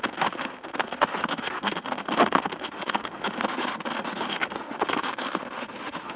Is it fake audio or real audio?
fake